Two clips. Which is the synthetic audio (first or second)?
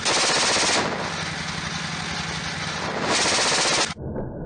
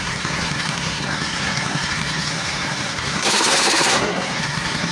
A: second